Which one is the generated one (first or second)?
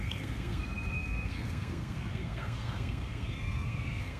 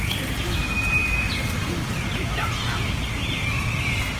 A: first